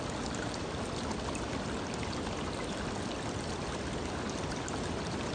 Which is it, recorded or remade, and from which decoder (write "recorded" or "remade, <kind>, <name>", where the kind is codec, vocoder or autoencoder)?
recorded